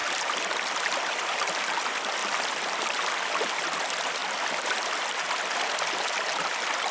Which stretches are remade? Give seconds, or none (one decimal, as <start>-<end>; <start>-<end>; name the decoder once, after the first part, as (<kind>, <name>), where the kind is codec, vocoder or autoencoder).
0.0-1.4 (vocoder, BigVGAN v2); 2.2-3.3; 4.2-5.0